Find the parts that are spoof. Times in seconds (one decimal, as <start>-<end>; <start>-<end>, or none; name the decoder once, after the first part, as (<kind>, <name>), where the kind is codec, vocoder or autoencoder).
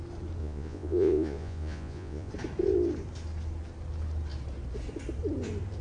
0.4-2.3 (vocoder, Vocos)